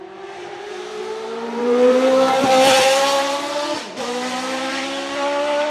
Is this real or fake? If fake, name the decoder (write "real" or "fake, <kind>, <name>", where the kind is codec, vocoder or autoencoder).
fake, vocoder, BigVGAN v2